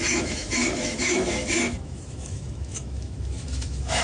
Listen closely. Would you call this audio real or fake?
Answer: fake